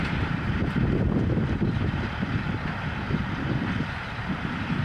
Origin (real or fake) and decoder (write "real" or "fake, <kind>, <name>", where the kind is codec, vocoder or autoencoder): real